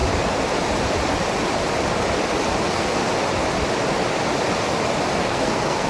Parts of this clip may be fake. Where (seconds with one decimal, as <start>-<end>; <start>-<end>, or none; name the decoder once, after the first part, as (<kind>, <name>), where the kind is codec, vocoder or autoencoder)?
2.6-3.0 (codec, SNAC); 5.2-5.9